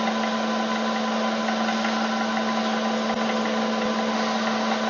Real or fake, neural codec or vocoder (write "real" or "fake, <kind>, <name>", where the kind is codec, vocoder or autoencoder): real